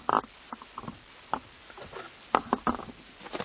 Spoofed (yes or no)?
no